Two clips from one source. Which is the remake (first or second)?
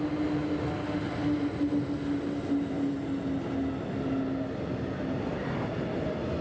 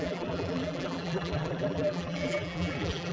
second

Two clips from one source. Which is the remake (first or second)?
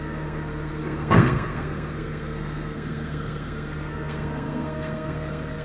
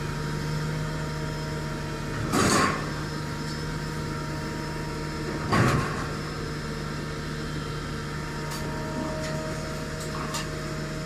first